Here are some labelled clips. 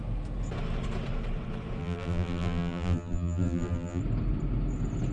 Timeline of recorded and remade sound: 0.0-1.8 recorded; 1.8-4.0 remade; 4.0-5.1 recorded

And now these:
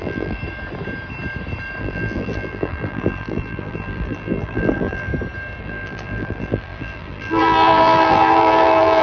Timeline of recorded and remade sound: 0.0-0.4 remade; 0.4-1.8 recorded; 1.8-5.1 remade; 5.1-5.6 recorded; 5.6-9.0 remade

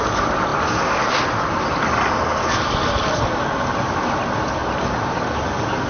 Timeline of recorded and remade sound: 0.0-5.9 recorded

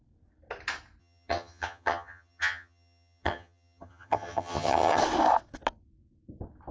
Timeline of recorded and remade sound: 0.0-1.0 recorded; 1.0-5.0 remade; 5.0-6.7 recorded

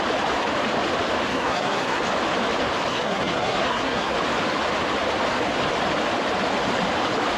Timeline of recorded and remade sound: 0.0-1.3 recorded; 1.3-2.0 remade; 2.0-2.9 recorded; 2.9-4.1 remade; 4.1-7.4 recorded

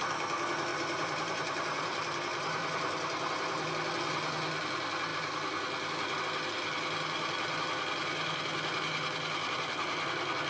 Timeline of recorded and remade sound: 0.0-0.7 recorded; 0.7-3.7 remade; 3.7-10.5 recorded

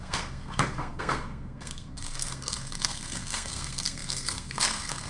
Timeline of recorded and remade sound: 0.0-5.1 remade

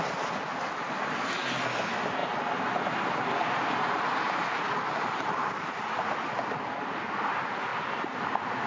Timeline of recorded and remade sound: 0.0-8.7 recorded